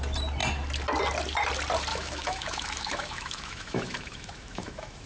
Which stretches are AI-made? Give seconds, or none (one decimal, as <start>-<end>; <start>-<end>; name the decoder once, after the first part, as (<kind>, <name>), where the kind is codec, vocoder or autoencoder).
1.9-5.1 (autoencoder, DAC-VAE)